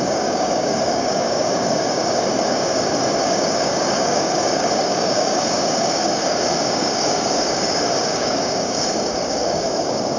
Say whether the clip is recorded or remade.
remade